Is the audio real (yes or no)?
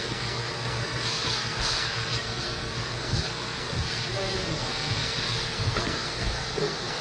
no